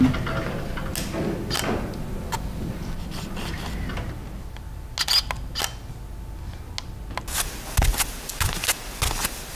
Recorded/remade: recorded